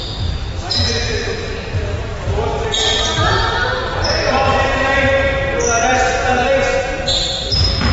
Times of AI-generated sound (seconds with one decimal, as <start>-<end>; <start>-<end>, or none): none

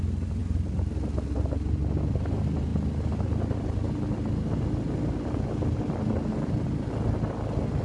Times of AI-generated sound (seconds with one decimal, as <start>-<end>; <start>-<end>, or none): 0.4-1.5

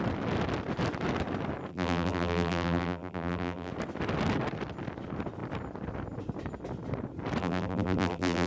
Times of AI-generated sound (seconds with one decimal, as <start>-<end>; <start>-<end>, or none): 1.7-3.7; 7.4-8.5

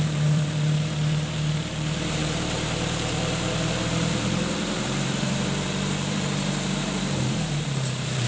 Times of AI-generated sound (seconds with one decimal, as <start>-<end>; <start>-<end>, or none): 0.0-8.3

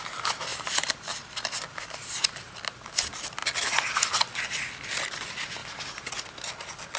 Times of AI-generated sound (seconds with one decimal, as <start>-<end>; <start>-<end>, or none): 0.5-2.9

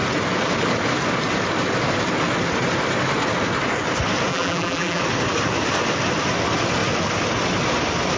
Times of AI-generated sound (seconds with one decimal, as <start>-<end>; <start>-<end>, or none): 4.3-5.0

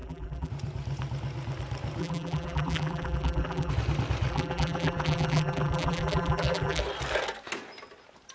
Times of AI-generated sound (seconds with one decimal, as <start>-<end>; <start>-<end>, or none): 0.0-0.5; 2.0-3.7; 4.3-6.8